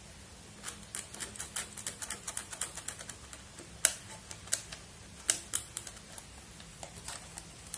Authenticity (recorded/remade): recorded